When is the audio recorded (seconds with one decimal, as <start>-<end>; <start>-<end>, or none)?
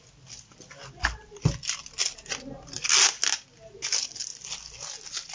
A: 0.0-5.3